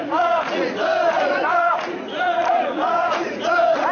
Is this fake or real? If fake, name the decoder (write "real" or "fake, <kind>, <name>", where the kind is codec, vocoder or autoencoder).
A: fake, vocoder, Vocos